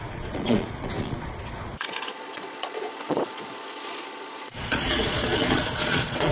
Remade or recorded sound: remade